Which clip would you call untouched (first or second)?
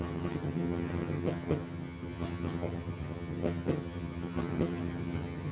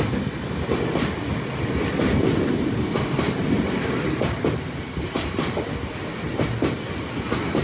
second